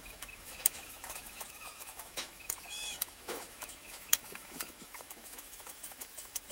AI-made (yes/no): yes